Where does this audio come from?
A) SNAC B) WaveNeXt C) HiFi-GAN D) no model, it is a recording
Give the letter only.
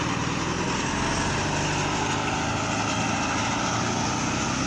D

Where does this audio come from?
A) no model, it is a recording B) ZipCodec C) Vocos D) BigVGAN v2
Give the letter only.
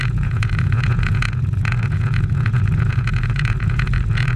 C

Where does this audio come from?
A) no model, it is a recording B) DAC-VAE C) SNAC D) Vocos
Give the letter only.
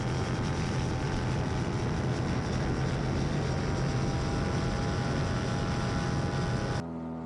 A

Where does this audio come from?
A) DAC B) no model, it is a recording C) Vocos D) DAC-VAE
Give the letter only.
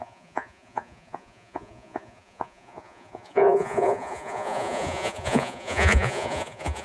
C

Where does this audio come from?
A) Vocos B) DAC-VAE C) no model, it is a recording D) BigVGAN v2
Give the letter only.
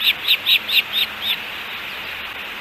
C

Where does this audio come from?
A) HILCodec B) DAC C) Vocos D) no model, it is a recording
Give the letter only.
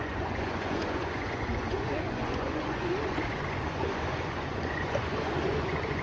C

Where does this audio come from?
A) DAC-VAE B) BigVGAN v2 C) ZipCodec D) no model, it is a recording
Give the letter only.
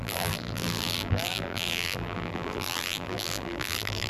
B